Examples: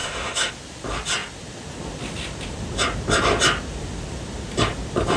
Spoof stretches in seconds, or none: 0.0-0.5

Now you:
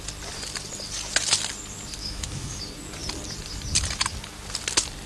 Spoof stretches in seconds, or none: 2.0-2.6

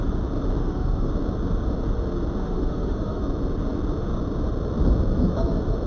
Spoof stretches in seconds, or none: 0.6-1.1; 2.4-3.2

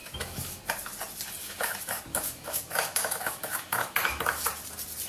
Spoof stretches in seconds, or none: 0.0-0.6; 1.4-4.5

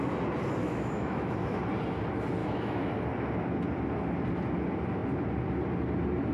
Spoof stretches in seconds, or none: 0.6-1.6; 2.4-2.9

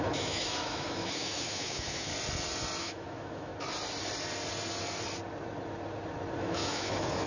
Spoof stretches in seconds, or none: 0.0-2.1; 2.8-3.5; 6.4-7.3

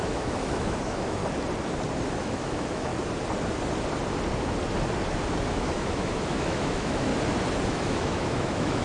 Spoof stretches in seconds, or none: 0.0-1.2; 2.2-2.9; 5.5-7.1; 7.7-8.8